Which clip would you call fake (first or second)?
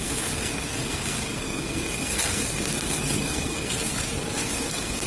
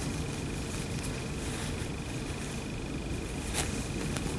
first